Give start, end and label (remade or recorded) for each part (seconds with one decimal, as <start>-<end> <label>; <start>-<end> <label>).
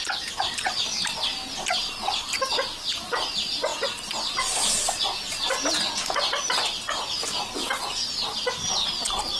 0.0-9.4 recorded